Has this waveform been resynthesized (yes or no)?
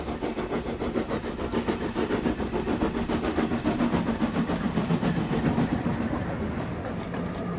no